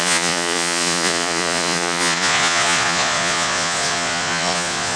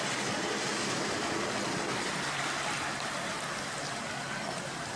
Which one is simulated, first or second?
first